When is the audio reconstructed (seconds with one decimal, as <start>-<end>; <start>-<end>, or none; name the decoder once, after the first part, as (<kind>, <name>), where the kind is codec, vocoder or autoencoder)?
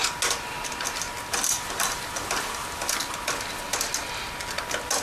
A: none